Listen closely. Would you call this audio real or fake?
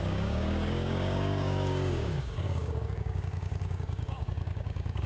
fake